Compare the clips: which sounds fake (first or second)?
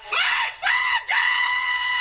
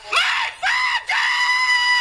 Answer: first